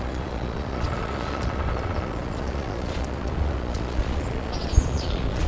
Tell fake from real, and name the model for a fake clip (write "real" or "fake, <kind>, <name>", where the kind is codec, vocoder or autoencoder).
fake, vocoder, Vocos